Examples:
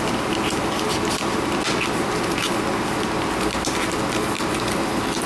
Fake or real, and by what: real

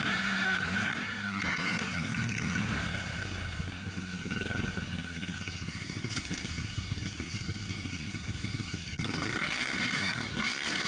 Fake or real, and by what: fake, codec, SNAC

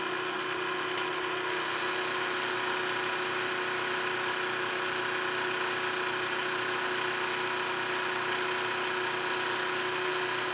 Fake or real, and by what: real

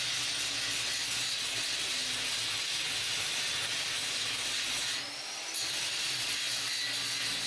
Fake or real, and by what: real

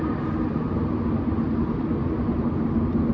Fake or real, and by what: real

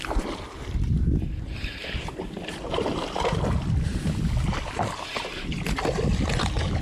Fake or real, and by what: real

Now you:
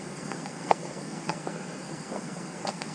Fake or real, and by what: fake, codec, SNAC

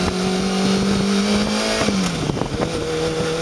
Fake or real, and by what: real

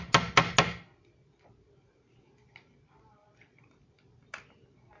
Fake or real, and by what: real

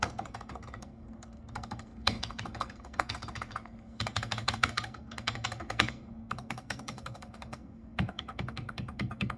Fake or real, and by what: fake, codec, SNAC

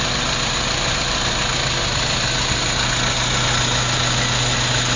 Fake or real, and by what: real